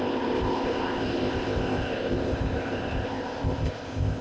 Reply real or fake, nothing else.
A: fake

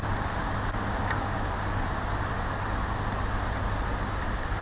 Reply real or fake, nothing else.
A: real